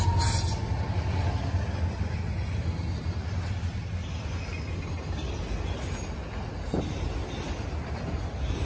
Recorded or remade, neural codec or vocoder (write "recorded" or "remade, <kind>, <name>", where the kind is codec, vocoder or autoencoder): recorded